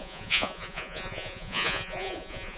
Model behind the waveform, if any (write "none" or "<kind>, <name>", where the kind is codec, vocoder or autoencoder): vocoder, Vocos